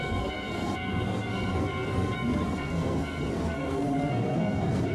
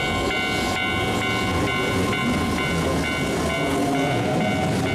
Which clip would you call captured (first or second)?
second